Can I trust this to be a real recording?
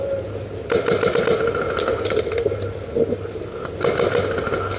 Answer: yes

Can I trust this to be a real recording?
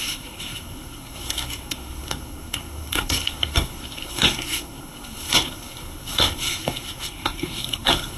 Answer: no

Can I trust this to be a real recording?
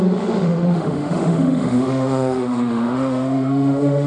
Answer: no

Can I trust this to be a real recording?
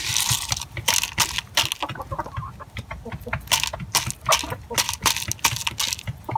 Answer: yes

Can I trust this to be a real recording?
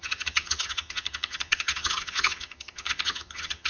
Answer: no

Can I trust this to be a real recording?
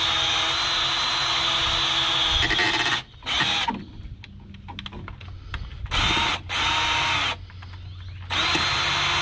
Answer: yes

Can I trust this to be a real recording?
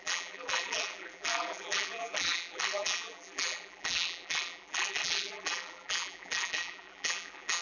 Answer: no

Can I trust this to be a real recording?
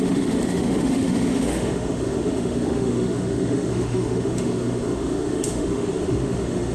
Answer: no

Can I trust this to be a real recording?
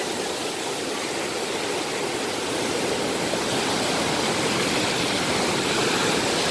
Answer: no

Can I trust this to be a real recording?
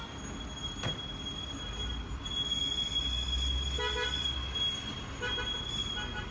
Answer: yes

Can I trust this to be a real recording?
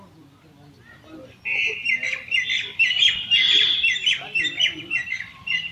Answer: yes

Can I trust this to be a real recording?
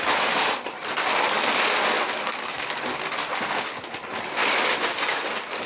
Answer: yes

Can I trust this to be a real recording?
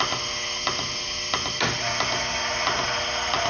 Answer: yes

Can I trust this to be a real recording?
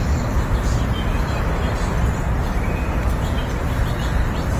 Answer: yes